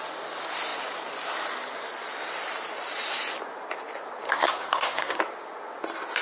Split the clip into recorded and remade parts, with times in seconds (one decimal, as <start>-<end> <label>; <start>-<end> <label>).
0.0-4.3 recorded; 4.3-5.2 remade; 5.2-6.2 recorded